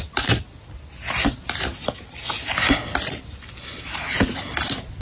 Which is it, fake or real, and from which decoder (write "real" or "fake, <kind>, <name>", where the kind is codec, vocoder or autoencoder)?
real